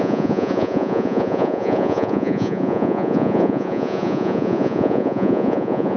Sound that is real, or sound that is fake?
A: fake